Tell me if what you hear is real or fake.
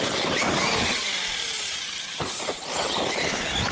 real